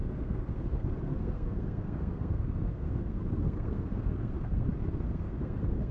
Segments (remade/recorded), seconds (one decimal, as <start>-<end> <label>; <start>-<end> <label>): 0.0-5.9 remade